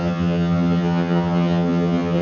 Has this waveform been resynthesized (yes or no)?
yes